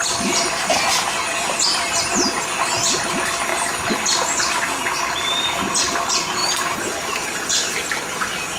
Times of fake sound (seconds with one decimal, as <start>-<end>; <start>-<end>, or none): none